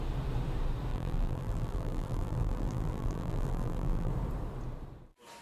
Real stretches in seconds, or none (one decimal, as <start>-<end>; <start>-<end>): 0.0-0.9; 4.1-5.4